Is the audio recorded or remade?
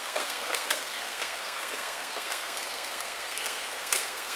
remade